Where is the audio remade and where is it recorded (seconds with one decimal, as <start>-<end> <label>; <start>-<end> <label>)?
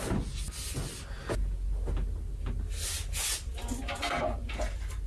0.0-5.1 recorded